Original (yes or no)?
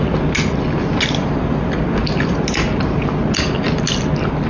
yes